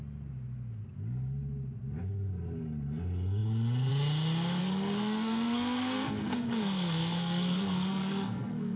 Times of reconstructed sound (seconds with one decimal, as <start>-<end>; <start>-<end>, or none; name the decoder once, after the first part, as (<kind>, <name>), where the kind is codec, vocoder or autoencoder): 4.6-8.8 (codec, SNAC)